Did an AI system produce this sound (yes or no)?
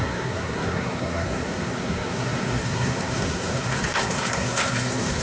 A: yes